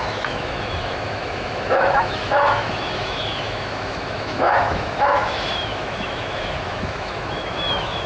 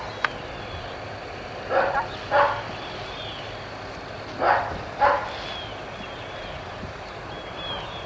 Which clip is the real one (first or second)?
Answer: second